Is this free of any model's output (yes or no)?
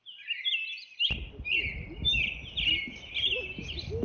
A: yes